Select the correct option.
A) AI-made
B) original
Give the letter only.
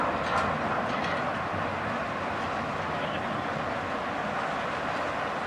B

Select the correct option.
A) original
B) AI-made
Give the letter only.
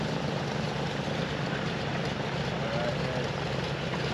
A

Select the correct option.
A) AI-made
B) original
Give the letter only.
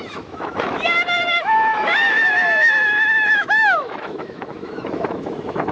A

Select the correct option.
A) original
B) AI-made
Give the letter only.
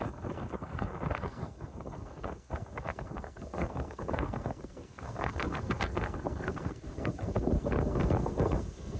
B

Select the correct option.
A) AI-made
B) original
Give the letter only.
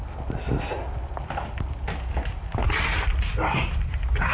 B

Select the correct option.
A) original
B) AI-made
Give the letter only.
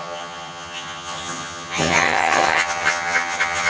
B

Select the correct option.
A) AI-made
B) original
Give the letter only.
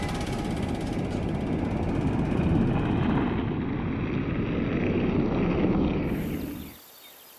B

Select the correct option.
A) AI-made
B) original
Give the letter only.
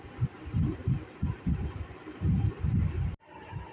B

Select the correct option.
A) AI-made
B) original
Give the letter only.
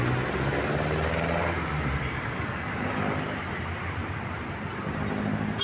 B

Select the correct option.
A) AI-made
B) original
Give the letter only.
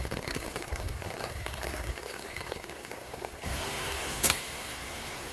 A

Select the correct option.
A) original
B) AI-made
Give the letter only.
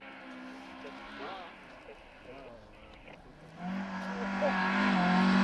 A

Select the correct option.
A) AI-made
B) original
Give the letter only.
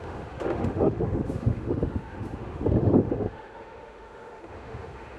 A